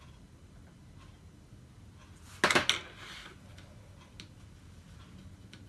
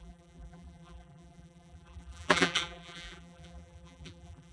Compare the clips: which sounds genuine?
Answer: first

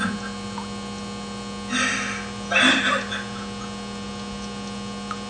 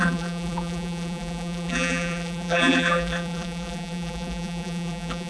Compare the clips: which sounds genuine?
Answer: first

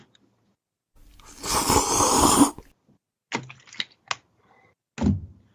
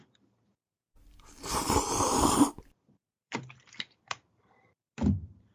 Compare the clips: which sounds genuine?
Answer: first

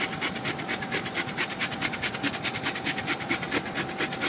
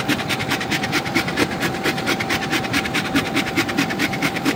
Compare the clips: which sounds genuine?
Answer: first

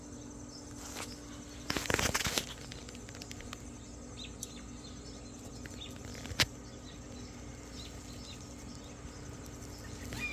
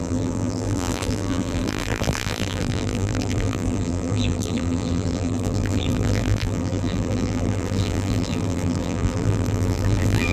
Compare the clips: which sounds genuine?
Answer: first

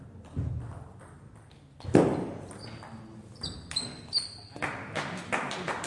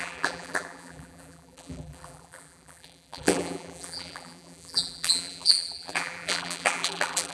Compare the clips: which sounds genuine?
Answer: first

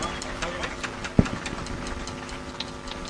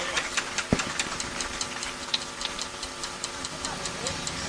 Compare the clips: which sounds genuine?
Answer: first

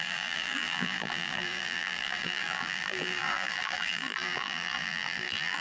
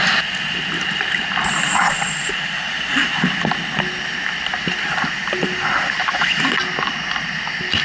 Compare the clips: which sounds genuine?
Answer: second